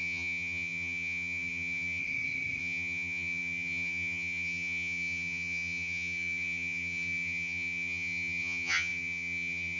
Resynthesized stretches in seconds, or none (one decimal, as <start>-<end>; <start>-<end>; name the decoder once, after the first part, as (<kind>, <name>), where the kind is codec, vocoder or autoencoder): 0.0-2.0 (vocoder, HiFi-GAN); 2.6-9.8